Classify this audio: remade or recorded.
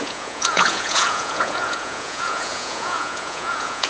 remade